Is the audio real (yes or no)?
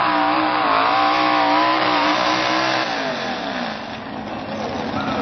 yes